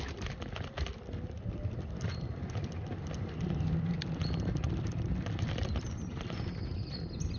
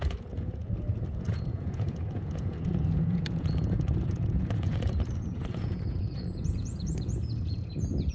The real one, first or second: first